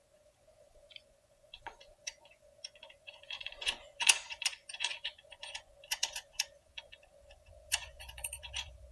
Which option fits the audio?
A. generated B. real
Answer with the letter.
A